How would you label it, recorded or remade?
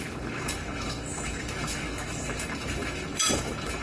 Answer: remade